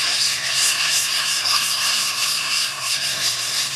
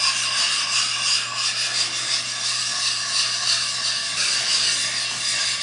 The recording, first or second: second